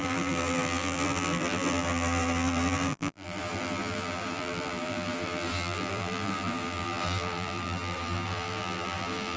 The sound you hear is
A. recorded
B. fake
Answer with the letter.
B